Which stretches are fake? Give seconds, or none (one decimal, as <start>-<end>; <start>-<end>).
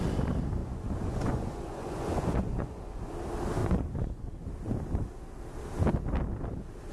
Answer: 0.6-3.1; 3.6-4.3